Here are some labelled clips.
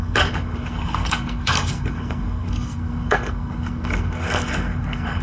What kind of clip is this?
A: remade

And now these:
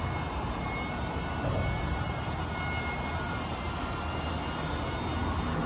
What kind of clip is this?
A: recorded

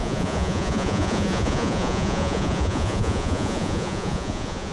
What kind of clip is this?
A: remade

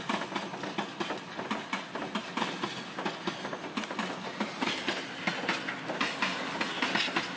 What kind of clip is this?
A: recorded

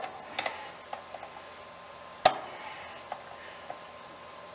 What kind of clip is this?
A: recorded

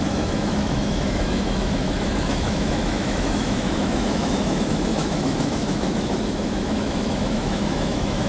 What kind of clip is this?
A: remade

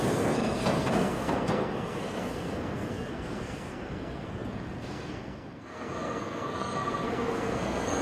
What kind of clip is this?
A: remade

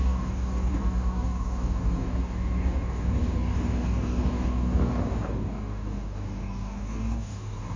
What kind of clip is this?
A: remade